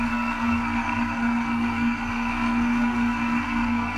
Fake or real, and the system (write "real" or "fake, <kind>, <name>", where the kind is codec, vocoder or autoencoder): fake, codec, SNAC